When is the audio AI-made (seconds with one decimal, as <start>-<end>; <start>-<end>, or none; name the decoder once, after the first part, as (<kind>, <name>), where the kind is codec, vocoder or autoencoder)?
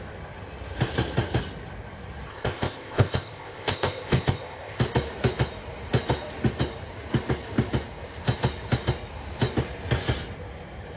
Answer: 2.3-4.8 (codec, ZipCodec)